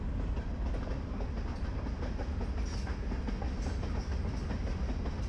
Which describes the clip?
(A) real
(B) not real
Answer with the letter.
A